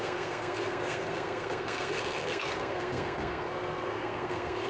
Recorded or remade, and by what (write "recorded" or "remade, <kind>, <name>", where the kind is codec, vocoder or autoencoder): remade, codec, SNAC